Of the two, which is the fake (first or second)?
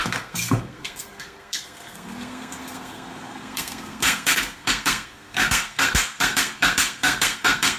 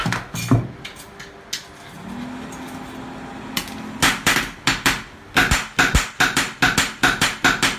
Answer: first